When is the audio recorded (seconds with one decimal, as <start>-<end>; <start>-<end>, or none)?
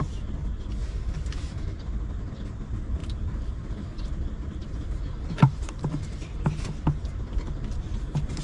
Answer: 0.0-0.8; 2.0-3.0; 4.1-4.6; 5.8-8.4